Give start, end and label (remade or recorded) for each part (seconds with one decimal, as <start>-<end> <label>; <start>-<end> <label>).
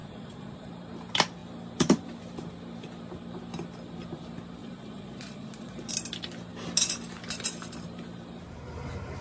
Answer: 0.0-0.7 remade; 0.7-4.6 recorded; 4.6-5.9 remade; 5.9-9.2 recorded